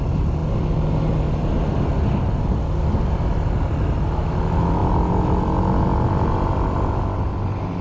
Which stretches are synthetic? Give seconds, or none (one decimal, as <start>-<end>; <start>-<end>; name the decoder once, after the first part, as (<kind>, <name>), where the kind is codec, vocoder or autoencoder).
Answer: none